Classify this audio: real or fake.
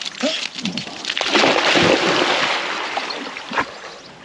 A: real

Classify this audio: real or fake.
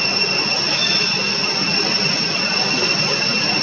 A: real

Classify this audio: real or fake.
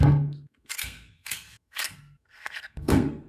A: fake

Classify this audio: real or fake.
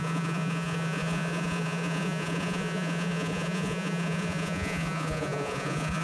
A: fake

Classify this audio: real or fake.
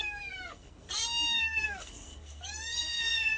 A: fake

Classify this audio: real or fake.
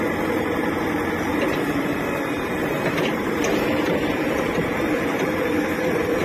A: fake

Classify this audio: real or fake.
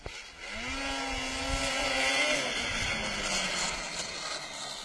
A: real